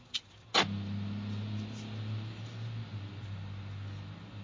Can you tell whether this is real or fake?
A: real